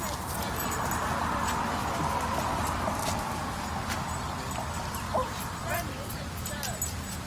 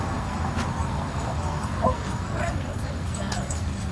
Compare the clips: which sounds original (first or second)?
first